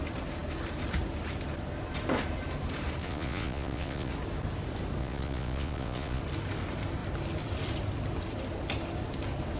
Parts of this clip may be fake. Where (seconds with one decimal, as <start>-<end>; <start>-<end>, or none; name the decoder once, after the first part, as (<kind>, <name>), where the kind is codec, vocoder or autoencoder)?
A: 3.0-4.1 (vocoder, Vocos); 5.0-6.2